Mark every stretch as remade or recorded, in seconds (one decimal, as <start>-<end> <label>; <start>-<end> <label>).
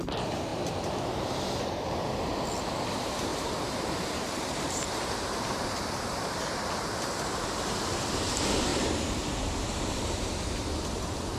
0.0-3.3 recorded; 3.3-6.5 remade; 6.5-8.7 recorded; 8.7-10.6 remade; 10.6-11.4 recorded